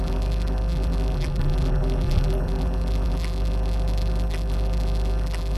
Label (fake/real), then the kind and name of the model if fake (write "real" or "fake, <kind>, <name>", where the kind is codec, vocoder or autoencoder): fake, vocoder, BigVGAN v2